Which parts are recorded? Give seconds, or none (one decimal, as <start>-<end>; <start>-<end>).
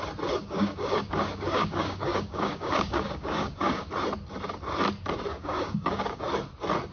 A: 0.0-0.4; 3.9-5.3; 6.2-6.9